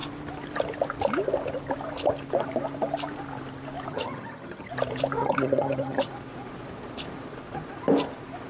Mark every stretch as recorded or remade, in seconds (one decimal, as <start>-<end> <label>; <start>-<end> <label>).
0.0-3.9 recorded; 3.9-4.7 remade; 4.7-5.2 recorded; 5.2-6.1 remade; 6.1-8.5 recorded